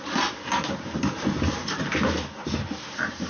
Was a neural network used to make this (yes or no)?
no